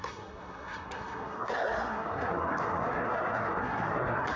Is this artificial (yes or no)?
yes